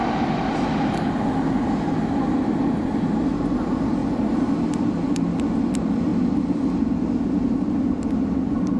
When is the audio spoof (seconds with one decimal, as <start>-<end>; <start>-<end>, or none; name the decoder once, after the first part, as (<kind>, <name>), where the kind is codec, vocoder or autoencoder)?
none